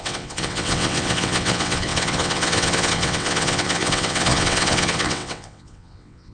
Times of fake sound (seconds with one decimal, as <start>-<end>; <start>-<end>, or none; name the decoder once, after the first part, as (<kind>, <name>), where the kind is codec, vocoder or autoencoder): 0.0-6.3 (vocoder, WaveNeXt)